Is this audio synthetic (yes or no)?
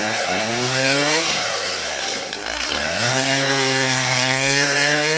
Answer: yes